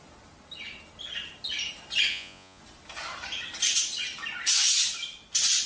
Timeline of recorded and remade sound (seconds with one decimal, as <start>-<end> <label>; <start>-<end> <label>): 0.0-2.1 recorded; 2.1-2.6 remade; 2.6-5.7 recorded